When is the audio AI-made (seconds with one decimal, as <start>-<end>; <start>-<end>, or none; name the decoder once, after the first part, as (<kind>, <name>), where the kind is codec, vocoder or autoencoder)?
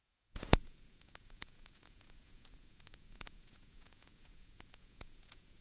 0.0-5.6 (vocoder, Vocos)